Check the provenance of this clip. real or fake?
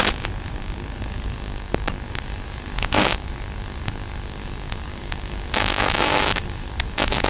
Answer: fake